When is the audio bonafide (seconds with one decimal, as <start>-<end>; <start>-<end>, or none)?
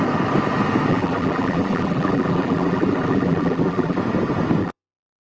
0.0-0.9; 4.0-4.6